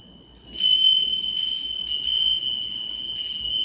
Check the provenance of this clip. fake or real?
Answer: real